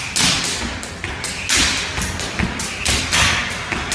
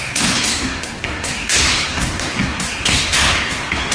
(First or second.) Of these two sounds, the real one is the first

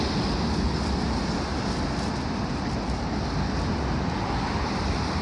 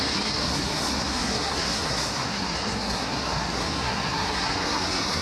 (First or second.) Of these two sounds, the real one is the first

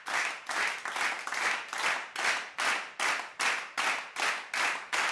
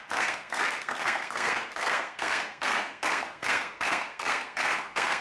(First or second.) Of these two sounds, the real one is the first